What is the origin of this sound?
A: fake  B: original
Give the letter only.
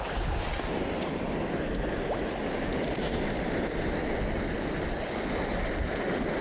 B